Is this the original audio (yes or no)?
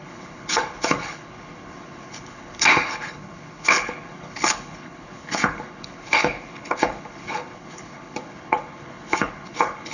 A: no